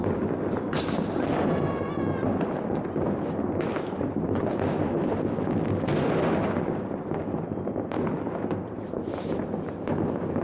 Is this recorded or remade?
remade